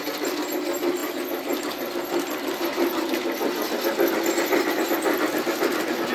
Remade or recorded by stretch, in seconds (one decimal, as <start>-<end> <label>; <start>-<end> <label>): 0.0-6.1 recorded